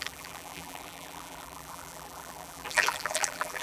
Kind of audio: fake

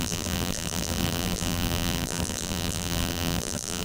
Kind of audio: fake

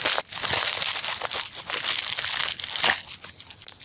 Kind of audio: real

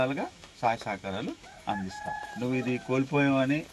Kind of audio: fake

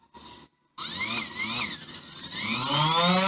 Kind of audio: real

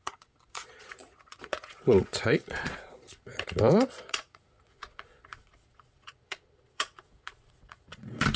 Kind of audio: fake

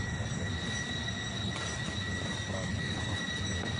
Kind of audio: real